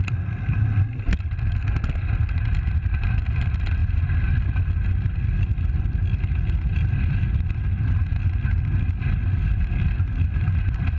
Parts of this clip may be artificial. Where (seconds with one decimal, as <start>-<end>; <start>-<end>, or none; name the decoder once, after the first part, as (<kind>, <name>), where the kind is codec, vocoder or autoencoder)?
none